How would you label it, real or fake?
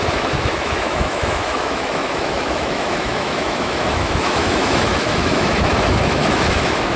fake